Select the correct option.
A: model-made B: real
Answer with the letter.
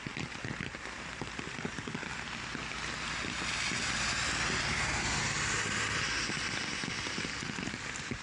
B